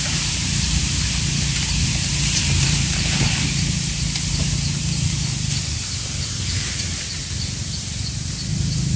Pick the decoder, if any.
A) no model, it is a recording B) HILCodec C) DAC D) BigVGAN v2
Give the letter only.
D